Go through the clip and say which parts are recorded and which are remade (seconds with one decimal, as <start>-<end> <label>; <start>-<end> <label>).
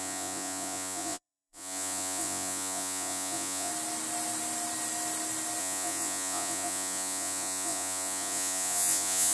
0.0-3.7 remade; 3.7-5.6 recorded; 5.6-9.3 remade